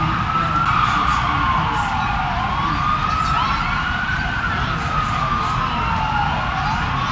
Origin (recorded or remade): recorded